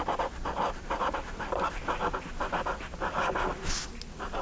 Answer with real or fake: real